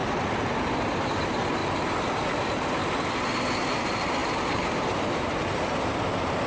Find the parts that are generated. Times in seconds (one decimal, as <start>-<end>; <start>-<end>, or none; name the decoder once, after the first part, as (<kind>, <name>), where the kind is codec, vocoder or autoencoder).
0.0-1.6 (vocoder, BigVGAN v2); 3.6-6.5